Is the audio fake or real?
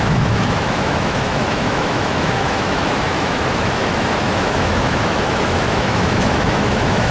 fake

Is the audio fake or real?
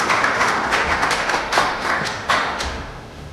fake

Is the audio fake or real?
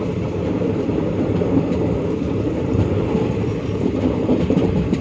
fake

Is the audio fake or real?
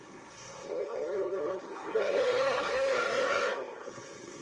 fake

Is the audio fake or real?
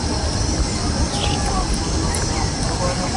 real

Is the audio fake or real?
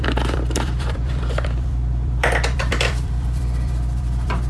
fake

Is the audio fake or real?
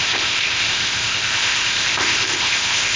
fake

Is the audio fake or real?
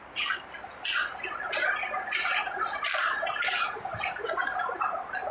real